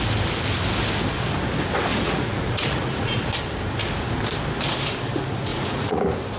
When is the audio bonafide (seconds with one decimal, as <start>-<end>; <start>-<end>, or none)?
0.0-1.9; 3.2-5.5; 6.0-6.4